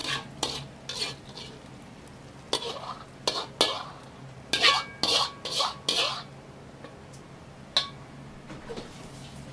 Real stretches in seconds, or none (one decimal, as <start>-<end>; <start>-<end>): 0.0-9.5